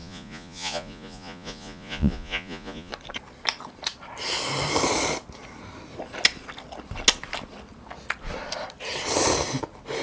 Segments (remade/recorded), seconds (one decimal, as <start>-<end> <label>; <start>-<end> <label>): 0.0-2.9 remade; 2.9-10.0 recorded